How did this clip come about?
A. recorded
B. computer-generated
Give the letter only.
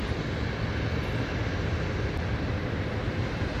A